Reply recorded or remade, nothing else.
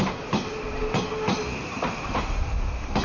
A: recorded